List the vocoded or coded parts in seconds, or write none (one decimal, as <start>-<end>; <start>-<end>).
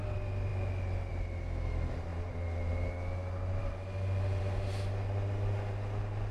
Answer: none